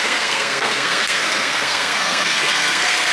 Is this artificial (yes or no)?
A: yes